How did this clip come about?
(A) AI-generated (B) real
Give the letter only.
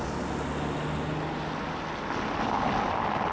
B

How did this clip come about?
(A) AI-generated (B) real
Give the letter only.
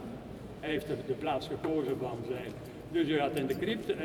A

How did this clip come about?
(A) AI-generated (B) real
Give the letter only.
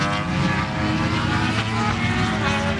B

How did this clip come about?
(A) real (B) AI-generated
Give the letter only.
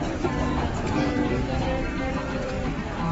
B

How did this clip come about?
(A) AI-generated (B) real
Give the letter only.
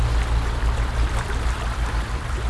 A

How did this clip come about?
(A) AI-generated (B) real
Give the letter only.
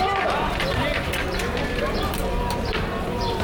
A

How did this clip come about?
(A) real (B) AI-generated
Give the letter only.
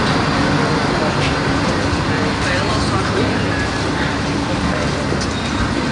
A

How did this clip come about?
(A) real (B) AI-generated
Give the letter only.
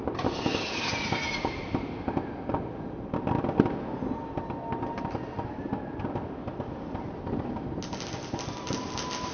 A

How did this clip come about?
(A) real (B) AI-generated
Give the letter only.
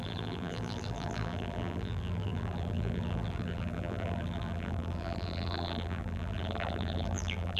B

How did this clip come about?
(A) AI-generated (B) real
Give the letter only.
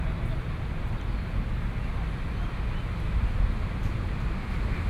B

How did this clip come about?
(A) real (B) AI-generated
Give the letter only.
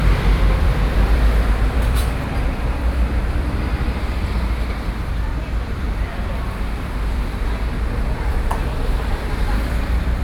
B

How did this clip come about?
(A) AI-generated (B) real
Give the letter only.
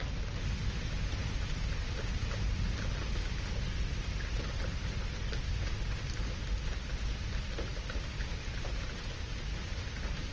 B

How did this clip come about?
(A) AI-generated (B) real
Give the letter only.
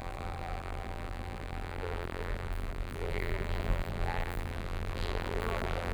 A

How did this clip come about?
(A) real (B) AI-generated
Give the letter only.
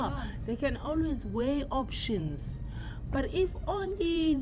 B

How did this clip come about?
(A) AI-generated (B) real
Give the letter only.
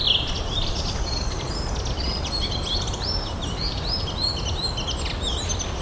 B